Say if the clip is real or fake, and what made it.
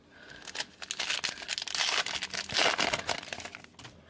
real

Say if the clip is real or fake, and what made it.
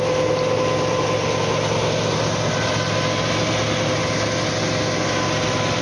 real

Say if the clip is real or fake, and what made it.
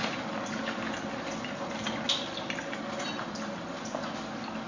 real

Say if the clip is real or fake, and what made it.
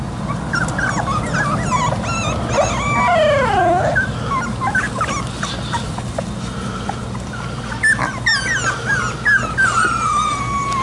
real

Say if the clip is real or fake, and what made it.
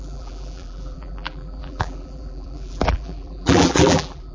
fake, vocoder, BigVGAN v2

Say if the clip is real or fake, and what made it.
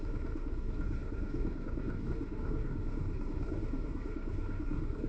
fake, codec, DAC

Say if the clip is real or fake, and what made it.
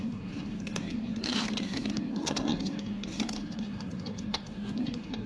fake, codec, SNAC